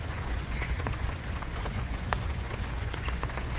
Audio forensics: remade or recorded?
remade